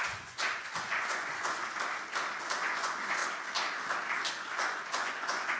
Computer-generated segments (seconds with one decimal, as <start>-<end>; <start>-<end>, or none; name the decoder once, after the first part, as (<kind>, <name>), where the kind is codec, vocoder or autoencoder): 0.0-1.6 (vocoder, Vocos); 2.6-3.2; 4.3-5.6